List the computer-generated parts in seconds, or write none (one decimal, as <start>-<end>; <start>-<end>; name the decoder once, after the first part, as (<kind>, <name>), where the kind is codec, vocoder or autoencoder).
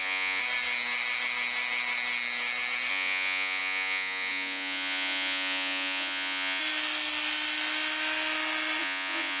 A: 0.0-0.4 (vocoder, Vocos); 2.9-6.6; 8.8-9.4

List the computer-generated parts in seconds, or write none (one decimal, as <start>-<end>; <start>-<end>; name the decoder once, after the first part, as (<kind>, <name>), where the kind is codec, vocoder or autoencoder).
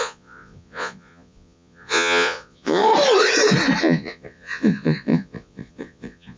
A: 0.0-2.9 (vocoder, Vocos); 3.8-6.4